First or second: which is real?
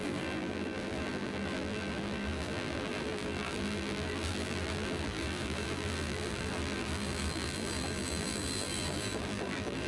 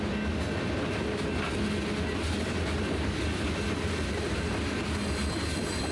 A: second